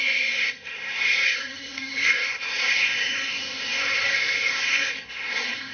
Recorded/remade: remade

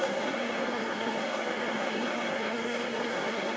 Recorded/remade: remade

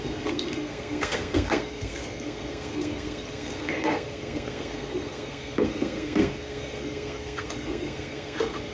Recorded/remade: remade